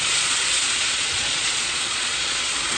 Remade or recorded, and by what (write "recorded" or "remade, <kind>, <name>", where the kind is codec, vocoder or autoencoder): remade, vocoder, Vocos